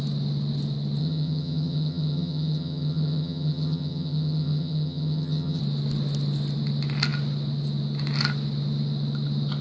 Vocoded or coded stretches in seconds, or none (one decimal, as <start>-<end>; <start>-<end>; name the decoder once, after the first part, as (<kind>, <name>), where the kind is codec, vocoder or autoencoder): 1.0-5.6 (vocoder, HiFi-GAN)